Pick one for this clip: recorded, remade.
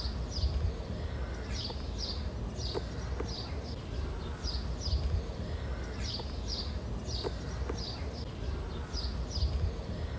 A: recorded